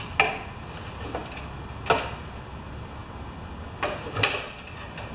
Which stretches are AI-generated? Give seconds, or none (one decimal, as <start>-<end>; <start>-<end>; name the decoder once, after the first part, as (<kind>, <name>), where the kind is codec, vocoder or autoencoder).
none